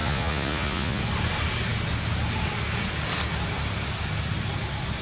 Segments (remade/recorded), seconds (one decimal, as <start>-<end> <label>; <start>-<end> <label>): 0.0-1.0 remade; 1.0-5.0 recorded